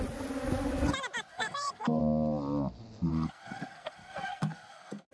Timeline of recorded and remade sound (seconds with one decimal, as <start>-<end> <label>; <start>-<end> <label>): 0.0-1.3 recorded; 1.3-2.0 remade; 2.0-3.1 recorded; 3.1-5.1 remade